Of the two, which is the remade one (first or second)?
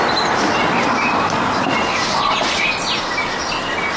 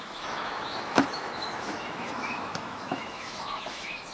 second